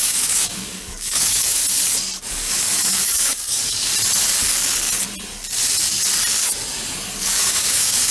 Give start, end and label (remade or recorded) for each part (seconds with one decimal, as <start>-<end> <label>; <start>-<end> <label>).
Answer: 0.0-1.6 remade; 1.6-2.3 recorded; 2.3-3.9 remade; 3.9-7.2 recorded; 7.2-8.1 remade